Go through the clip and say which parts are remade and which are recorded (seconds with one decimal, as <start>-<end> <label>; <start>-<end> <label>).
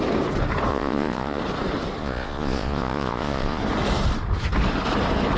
0.0-0.7 recorded; 0.7-1.4 remade; 1.4-2.0 recorded; 2.0-3.6 remade; 3.6-5.4 recorded